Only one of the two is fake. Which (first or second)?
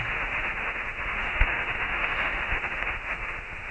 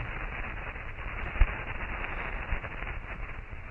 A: first